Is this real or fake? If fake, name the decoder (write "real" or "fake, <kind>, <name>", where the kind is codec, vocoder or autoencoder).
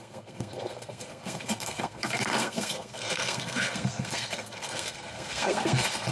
fake, codec, SNAC